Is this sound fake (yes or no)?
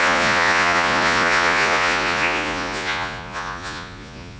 yes